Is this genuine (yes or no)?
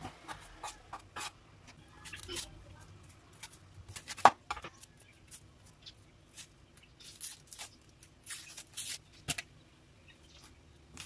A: yes